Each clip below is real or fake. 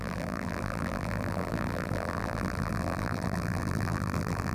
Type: fake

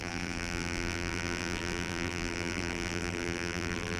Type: fake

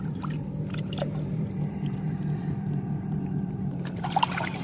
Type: fake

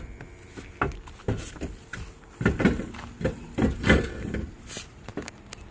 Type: real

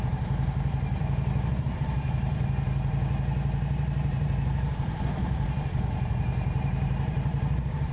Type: fake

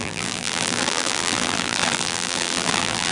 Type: fake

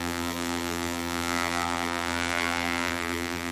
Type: fake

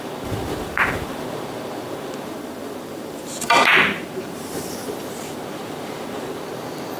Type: fake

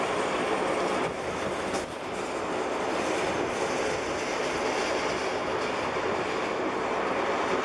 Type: fake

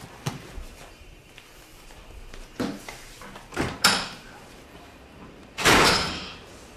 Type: fake